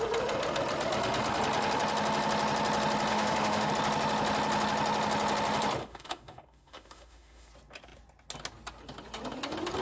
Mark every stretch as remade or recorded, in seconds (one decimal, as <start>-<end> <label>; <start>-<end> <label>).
0.0-3.1 recorded; 3.1-3.7 remade; 3.7-5.8 recorded; 5.8-7.5 remade; 7.5-9.8 recorded